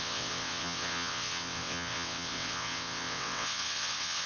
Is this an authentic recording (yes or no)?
no